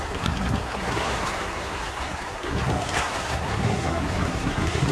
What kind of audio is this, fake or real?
fake